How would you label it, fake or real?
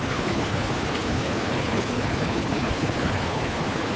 fake